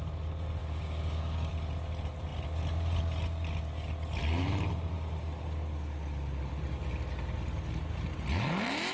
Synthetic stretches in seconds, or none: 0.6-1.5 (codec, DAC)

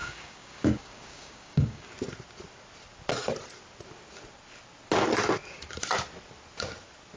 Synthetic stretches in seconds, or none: 0.0-1.9 (codec, DAC)

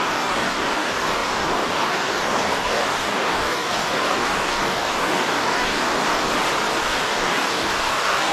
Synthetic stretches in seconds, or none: 0.0-6.3 (codec, DAC); 6.8-8.3

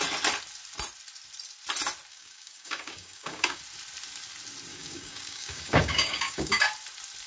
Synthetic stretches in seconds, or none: 2.1-3.6 (codec, DAC); 4.7-6.6

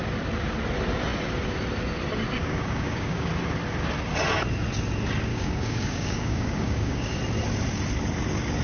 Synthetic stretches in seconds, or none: 2.4-3.3 (codec, DAC); 5.3-7.2

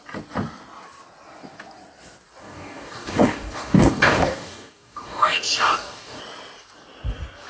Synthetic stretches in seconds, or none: 2.4-6.2 (codec, DAC)